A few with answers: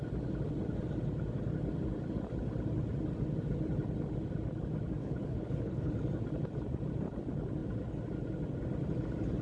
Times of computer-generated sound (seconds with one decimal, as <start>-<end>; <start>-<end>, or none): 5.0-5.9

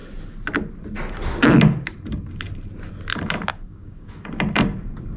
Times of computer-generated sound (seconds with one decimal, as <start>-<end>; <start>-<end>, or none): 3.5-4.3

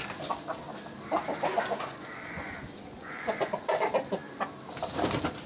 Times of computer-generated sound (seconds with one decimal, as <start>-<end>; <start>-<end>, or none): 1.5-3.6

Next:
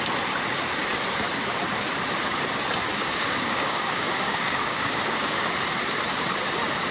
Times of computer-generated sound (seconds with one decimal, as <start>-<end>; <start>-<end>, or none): 3.0-5.4

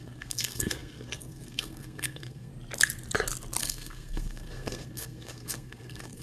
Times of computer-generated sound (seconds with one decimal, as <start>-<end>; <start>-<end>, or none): 0.0-2.5; 3.6-6.2